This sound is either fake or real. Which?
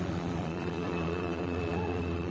fake